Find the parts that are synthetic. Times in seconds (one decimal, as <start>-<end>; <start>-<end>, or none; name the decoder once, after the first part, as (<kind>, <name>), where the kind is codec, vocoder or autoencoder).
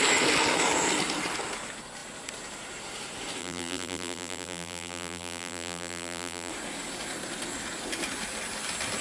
3.4-6.5 (vocoder, BigVGAN v2)